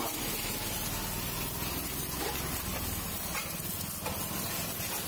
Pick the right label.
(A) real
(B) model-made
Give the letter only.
A